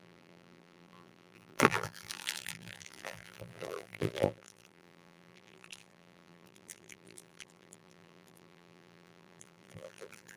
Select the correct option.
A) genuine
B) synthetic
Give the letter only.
B